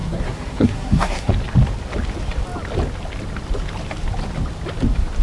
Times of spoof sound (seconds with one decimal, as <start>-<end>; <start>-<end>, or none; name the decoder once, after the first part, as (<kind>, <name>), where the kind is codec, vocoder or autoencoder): 0.0-1.3 (codec, SNAC)